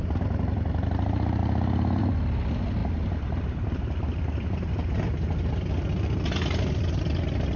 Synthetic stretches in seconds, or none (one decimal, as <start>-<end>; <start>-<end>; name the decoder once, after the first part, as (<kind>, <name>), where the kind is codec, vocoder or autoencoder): none